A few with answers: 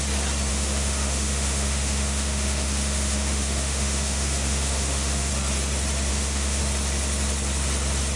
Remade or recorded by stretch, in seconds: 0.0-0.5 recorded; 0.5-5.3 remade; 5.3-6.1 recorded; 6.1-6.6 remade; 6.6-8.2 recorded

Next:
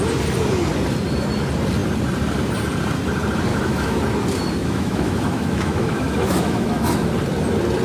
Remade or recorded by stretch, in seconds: 0.0-3.5 recorded; 3.5-4.0 remade; 4.0-4.6 recorded; 4.6-7.1 remade; 7.1-7.8 recorded

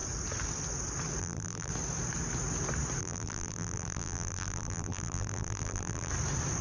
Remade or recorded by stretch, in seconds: 0.0-1.2 recorded; 1.2-1.7 remade; 1.7-3.0 recorded; 3.0-6.1 remade; 6.1-6.6 recorded

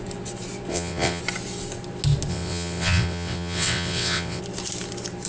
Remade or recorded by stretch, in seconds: 0.0-0.7 recorded; 0.7-1.2 remade; 1.2-2.3 recorded; 2.3-4.4 remade; 4.4-5.3 recorded

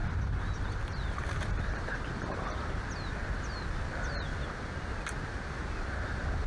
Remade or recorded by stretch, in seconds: 0.0-6.5 recorded